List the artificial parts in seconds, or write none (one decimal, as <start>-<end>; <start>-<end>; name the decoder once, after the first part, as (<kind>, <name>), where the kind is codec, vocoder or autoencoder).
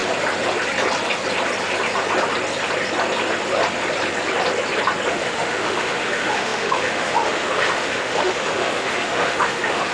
5.1-9.9 (autoencoder, DAC-VAE)